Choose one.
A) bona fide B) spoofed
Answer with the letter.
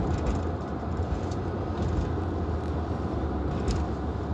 A